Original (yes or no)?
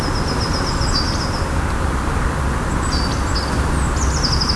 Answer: yes